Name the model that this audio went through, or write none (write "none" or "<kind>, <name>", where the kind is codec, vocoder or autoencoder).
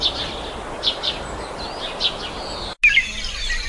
none